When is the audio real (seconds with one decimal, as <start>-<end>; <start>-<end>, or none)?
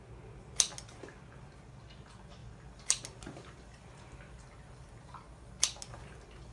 0.0-6.5